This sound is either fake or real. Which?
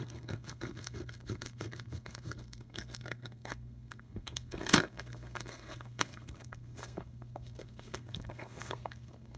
fake